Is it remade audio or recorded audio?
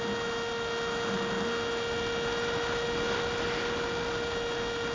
recorded